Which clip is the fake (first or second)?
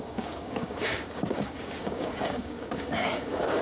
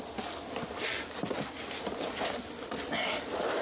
first